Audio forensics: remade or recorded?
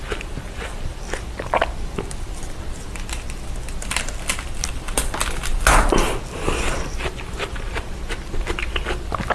recorded